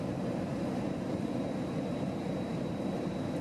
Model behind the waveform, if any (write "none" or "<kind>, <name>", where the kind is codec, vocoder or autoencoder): vocoder, BigVGAN v2